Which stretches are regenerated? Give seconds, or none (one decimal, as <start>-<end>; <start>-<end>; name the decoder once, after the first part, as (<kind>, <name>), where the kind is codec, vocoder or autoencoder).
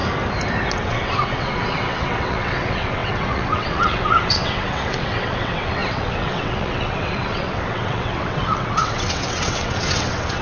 0.7-10.4 (vocoder, WaveNeXt)